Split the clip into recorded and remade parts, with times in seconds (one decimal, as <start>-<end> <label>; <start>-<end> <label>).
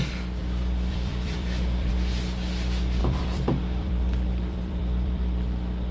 0.0-0.4 recorded; 0.4-1.9 remade; 1.9-3.0 recorded; 3.0-5.9 remade